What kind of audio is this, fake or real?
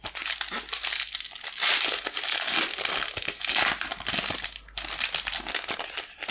real